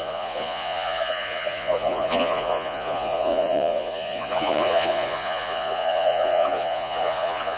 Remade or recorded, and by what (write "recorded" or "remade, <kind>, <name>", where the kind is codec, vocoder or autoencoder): remade, vocoder, Vocos